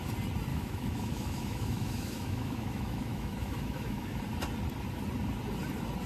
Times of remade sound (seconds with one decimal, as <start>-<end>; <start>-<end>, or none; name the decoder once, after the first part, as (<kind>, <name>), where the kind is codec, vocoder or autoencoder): 0.5-4.2 (autoencoder, DAC-VAE)